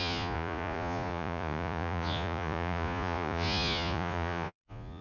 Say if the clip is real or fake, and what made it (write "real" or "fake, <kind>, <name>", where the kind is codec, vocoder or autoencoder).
fake, vocoder, Vocos